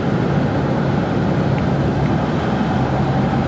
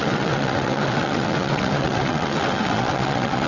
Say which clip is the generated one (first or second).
second